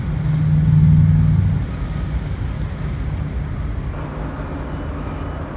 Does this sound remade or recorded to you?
recorded